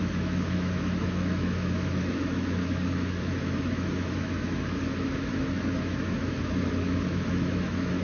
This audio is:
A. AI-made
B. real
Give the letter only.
A